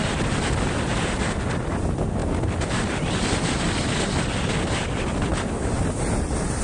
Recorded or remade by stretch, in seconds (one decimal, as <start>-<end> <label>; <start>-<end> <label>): 0.0-6.6 recorded